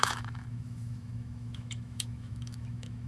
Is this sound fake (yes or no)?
yes